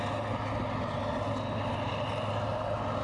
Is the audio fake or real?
real